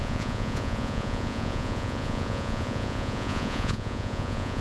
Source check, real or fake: fake